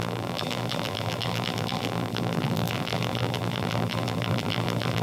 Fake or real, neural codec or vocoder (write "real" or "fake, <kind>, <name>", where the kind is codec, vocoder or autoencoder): fake, vocoder, BigVGAN v2